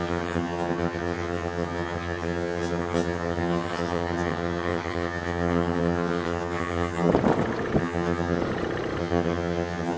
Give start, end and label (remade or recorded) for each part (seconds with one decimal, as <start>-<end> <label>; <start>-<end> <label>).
0.0-7.1 remade; 7.1-7.8 recorded; 7.8-8.4 remade; 8.4-9.0 recorded; 9.0-10.0 remade